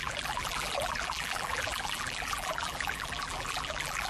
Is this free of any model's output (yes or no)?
no